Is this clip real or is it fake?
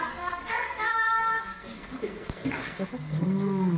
fake